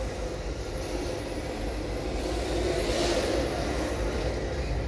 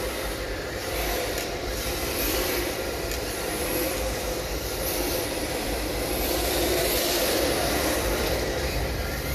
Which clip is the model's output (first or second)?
second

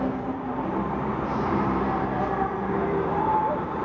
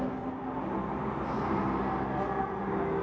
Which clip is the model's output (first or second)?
first